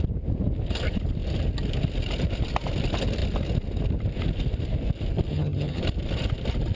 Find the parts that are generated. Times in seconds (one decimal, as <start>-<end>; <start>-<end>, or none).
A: 5.3-5.8